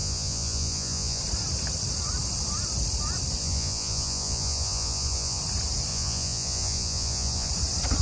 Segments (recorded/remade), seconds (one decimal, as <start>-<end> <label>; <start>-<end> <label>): 0.0-1.2 remade; 1.2-3.4 recorded; 3.4-5.4 remade; 5.4-5.9 recorded; 5.9-7.5 remade; 7.5-8.0 recorded